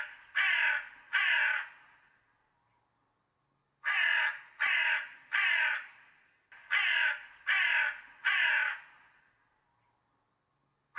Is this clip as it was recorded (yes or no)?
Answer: yes